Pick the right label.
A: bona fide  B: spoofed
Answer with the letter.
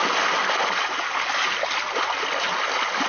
A